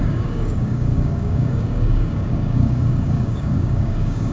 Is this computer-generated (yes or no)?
yes